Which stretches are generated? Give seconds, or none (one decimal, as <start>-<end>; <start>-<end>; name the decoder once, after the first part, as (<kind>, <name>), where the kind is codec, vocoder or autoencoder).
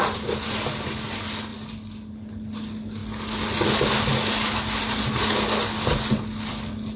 none